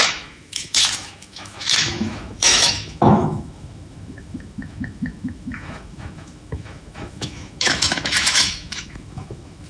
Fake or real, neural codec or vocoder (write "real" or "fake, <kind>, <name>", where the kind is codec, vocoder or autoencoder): fake, autoencoder, DAC-VAE